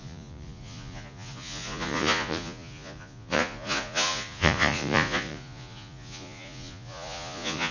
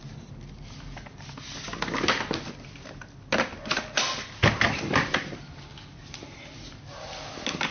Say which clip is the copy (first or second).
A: first